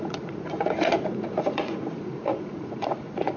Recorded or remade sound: remade